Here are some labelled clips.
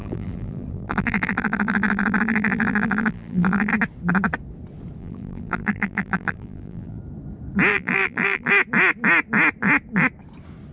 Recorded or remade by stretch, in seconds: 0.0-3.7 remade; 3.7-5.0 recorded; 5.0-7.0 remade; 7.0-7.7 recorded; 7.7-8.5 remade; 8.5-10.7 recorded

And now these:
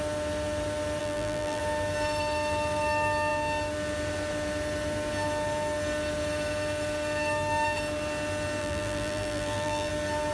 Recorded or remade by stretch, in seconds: 0.0-1.0 recorded; 1.0-1.6 remade; 1.6-8.6 recorded; 8.6-9.9 remade; 9.9-10.3 recorded